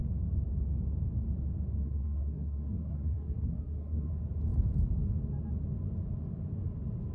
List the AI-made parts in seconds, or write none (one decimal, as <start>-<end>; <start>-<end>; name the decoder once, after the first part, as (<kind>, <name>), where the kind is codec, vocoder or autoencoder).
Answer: 1.8-4.1 (codec, SNAC)